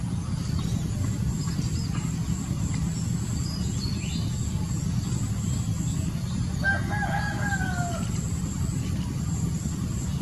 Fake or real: real